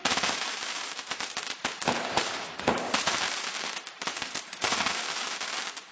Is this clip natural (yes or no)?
no